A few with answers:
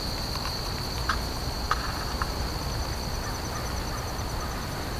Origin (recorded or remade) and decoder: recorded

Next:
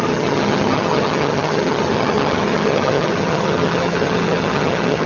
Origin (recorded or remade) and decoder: remade, vocoder, HiFi-GAN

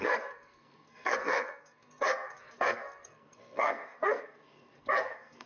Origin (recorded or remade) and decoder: remade, codec, SNAC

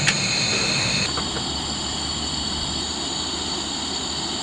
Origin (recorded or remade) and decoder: recorded